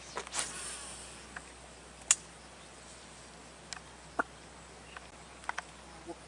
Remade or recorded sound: recorded